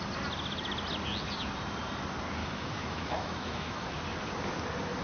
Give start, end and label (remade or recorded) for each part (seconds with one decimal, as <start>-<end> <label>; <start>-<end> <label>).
0.0-2.4 recorded; 2.4-4.0 remade; 4.0-5.0 recorded